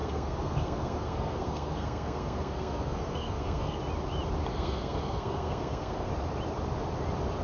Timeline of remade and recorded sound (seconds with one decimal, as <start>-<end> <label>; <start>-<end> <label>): 0.0-3.8 remade; 3.8-4.5 recorded; 4.5-6.1 remade; 6.1-7.4 recorded